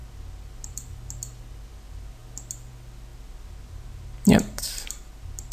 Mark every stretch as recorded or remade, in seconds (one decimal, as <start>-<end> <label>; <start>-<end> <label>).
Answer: 0.0-5.5 recorded